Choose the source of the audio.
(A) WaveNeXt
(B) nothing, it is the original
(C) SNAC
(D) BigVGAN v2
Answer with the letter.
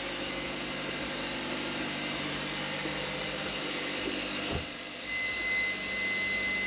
B